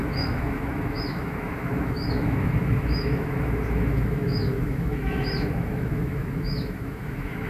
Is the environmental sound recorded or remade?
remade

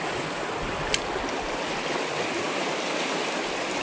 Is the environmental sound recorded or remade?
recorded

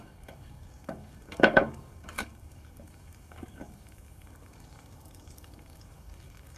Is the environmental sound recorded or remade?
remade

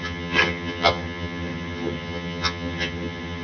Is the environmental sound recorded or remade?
remade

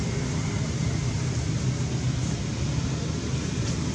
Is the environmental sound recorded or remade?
recorded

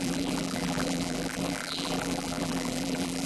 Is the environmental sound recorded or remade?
remade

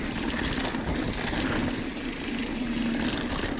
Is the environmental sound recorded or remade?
recorded